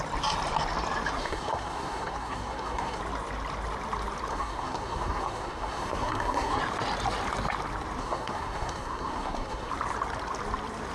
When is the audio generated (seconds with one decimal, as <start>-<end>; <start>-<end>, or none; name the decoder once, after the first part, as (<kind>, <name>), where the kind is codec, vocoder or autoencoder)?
1.2-3.0 (codec, SNAC); 4.3-6.6; 8.0-9.7